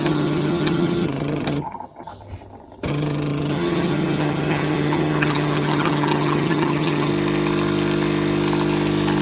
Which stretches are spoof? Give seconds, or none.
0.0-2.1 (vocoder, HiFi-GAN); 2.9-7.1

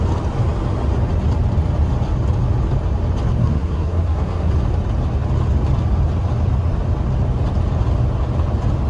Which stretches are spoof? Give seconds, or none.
3.4-4.5 (codec, SNAC)

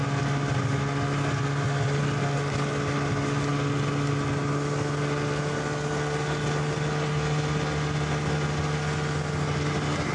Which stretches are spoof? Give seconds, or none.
none

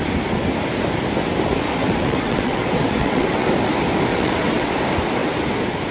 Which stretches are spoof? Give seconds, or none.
1.8-3.5 (vocoder, WaveNeXt); 4.1-4.7

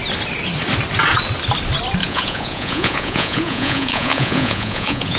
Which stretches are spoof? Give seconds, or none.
2.0-5.2 (vocoder, Vocos)

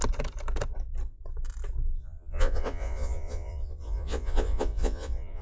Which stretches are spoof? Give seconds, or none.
2.0-5.4 (vocoder, Vocos)

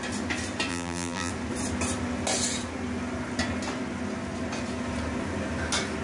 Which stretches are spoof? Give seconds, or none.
0.7-1.3 (vocoder, BigVGAN v2)